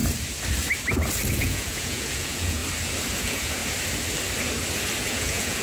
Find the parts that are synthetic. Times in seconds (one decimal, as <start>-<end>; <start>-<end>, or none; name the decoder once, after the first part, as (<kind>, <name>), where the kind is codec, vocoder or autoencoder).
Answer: 1.3-2.6 (vocoder, Vocos); 3.2-3.6; 5.0-5.6